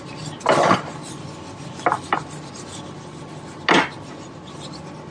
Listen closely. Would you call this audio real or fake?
real